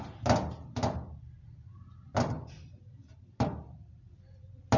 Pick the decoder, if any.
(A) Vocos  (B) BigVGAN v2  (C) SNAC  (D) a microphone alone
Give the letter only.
D